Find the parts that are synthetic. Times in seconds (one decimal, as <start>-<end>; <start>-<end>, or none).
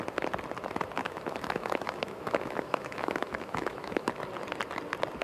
1.0-4.1